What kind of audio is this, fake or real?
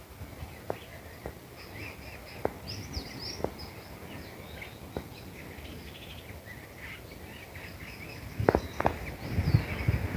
real